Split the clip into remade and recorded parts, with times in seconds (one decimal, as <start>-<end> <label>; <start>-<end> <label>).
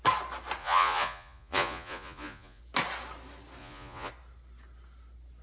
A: 0.0-0.6 recorded; 0.6-2.6 remade; 2.6-3.6 recorded; 3.6-4.1 remade; 4.1-5.4 recorded